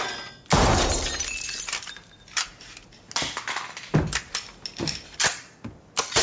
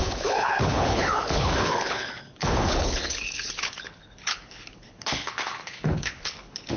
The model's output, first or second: second